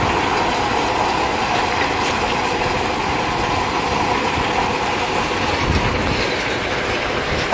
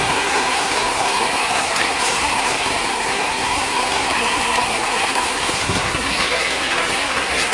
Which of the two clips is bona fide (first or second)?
first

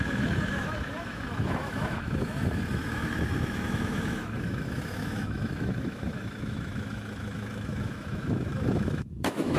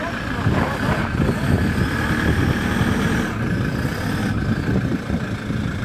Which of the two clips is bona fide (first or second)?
second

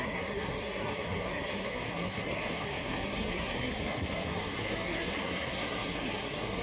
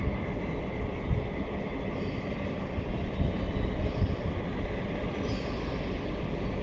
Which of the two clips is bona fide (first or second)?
second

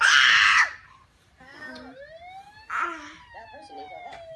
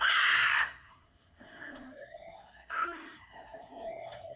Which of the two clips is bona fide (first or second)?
first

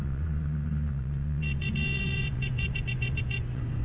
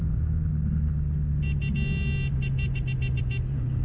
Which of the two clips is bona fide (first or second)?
second